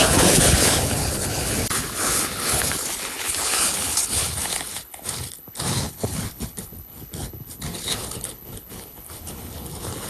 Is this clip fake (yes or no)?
yes